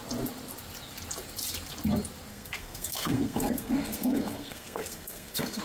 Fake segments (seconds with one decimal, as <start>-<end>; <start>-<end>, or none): 2.3-5.6